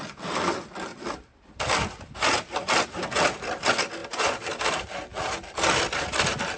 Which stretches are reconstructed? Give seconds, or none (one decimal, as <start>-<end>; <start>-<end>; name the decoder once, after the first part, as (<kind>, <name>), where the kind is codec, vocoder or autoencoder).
0.0-5.1 (vocoder, BigVGAN v2)

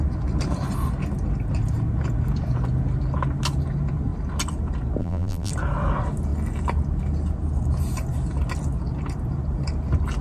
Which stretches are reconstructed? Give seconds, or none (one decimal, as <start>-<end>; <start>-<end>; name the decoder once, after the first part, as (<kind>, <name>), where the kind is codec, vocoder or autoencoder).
5.0-5.5 (vocoder, BigVGAN v2)